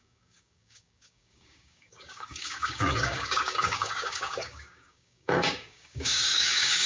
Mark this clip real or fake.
fake